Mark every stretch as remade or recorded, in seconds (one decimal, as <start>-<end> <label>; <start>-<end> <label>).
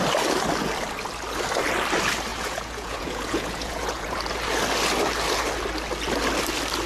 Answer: 0.0-2.3 recorded; 2.3-4.2 remade; 4.2-6.9 recorded